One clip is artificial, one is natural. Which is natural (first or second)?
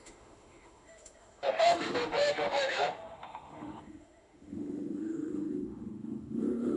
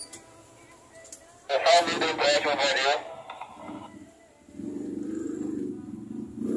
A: second